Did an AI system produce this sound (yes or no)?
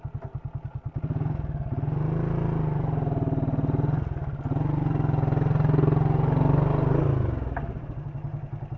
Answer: no